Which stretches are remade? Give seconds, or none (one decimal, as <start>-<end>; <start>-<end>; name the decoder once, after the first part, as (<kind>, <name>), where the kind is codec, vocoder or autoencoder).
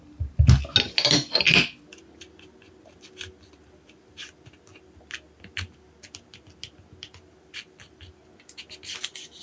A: none